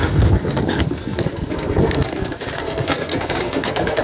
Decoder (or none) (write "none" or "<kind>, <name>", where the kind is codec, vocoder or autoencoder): codec, SNAC